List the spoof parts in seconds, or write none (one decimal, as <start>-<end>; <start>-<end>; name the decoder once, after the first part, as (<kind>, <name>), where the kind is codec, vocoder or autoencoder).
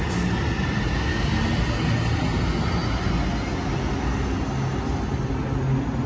none